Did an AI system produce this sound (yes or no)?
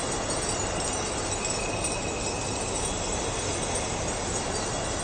no